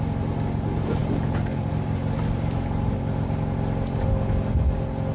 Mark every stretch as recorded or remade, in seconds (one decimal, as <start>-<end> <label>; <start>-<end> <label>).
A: 0.0-5.1 recorded